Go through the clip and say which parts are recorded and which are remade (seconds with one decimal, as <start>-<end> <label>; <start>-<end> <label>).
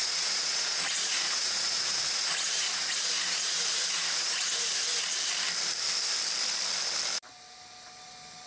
0.0-4.8 remade; 4.8-8.5 recorded